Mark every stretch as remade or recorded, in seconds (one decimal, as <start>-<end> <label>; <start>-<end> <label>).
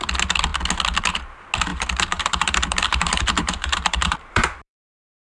0.0-1.7 recorded; 1.7-4.9 remade; 4.9-5.4 recorded